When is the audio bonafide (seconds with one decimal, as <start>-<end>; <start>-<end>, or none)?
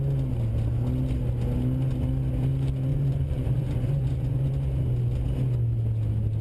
0.0-2.9; 4.5-6.4